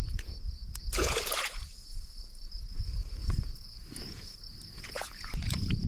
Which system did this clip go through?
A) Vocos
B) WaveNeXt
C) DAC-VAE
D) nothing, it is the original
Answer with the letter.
A